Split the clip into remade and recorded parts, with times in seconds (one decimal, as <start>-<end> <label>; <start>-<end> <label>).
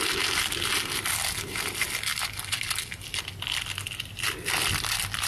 0.0-5.3 recorded